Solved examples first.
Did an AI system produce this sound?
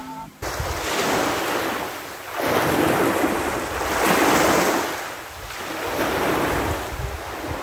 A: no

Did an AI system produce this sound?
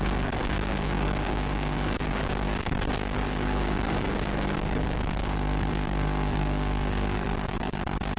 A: yes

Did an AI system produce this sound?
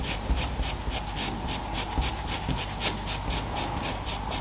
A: no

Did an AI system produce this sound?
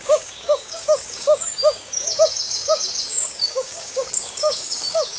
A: yes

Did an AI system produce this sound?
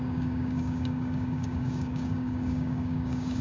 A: yes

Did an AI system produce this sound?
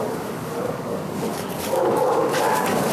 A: yes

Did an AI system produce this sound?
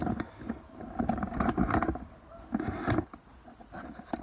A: no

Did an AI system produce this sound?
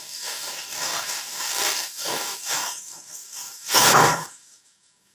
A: yes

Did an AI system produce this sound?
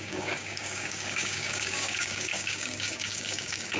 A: yes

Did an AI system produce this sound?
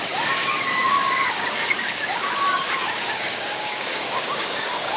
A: yes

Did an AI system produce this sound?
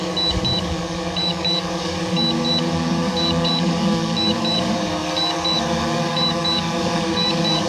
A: yes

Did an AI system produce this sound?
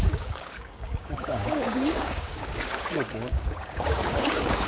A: yes